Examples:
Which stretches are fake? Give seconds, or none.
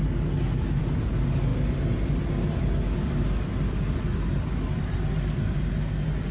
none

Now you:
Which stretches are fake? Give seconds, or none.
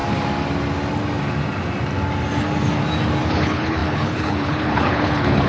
3.3-5.5 (codec, HILCodec)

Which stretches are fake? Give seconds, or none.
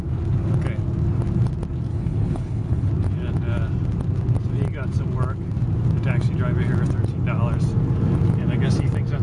1.9-2.9 (codec, HILCodec)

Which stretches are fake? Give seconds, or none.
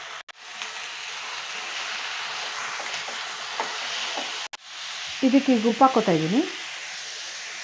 none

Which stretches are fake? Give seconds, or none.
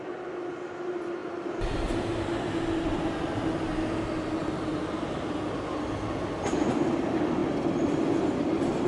none